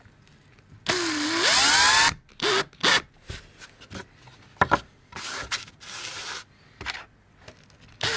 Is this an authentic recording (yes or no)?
yes